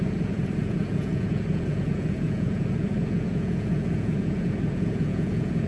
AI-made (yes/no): yes